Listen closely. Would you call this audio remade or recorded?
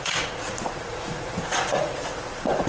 remade